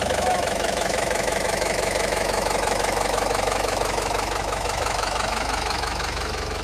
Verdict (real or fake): fake